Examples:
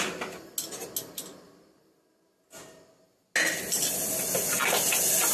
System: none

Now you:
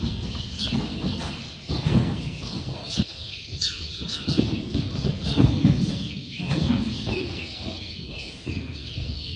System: codec, SNAC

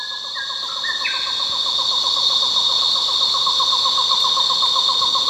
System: none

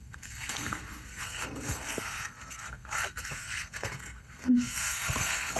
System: codec, SNAC